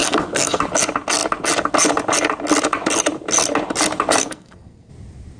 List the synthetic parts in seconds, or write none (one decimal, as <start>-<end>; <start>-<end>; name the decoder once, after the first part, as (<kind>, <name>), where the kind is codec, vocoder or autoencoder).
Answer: 0.0-0.6 (codec, SNAC); 4.2-4.9